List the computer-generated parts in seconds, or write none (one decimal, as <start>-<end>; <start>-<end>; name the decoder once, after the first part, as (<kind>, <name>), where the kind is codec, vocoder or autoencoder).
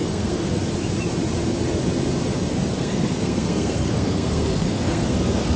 0.0-0.6 (codec, SNAC); 2.8-5.6